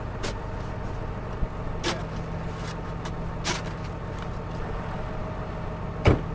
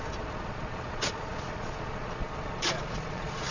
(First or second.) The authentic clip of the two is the first